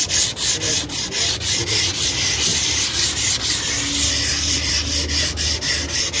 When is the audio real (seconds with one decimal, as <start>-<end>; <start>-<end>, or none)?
0.0-2.5; 4.7-6.2